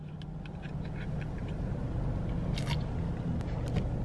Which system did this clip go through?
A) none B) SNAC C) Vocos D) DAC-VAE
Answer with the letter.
A